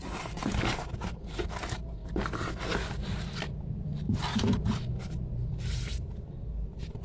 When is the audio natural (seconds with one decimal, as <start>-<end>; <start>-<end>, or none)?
0.0-7.0